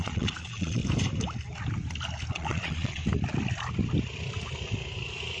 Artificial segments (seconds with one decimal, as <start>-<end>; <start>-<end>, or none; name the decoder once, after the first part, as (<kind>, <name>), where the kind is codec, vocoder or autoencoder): 0.0-0.8 (vocoder, Vocos); 2.3-3.0

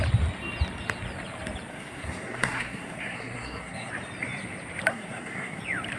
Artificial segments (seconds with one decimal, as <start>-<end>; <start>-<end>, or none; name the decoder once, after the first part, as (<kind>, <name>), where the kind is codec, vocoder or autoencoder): 1.7-3.9 (codec, SNAC); 4.9-5.6